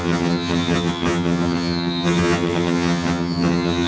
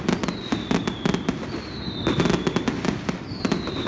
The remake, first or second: first